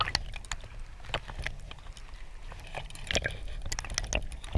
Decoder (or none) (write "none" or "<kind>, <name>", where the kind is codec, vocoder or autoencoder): none